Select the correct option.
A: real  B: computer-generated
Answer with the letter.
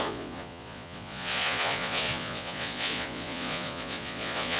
B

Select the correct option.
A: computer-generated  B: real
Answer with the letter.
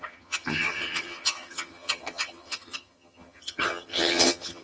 A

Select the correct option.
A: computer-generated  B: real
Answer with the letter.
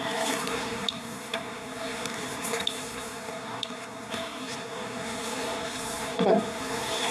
A